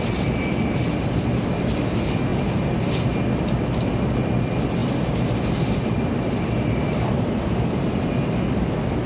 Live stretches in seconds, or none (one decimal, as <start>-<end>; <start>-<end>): 0.0-4.8; 6.1-9.1

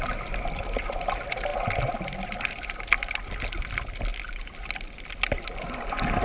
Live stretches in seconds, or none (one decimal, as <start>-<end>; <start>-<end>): 0.0-4.1; 5.1-6.2

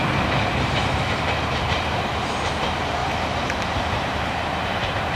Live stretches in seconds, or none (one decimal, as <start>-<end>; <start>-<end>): 2.1-3.0